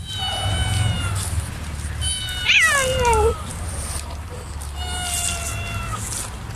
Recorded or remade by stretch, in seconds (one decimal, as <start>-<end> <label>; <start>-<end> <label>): 0.0-6.6 recorded